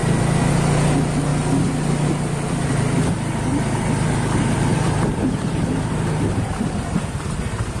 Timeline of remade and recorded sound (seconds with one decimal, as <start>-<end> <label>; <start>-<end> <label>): 0.0-4.7 recorded; 4.7-7.2 remade; 7.2-7.8 recorded